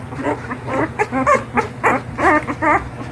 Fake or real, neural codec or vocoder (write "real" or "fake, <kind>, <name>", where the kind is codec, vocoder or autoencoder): real